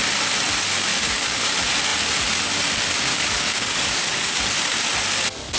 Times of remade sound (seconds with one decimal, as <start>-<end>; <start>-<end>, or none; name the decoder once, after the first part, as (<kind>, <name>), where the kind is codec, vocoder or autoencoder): 0.9-1.5 (codec, DAC); 3.1-4.4